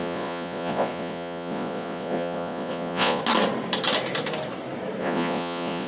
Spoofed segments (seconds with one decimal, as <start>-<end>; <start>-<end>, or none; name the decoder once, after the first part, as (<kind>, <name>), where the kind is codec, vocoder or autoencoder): 0.0-3.2 (vocoder, Vocos); 5.0-5.9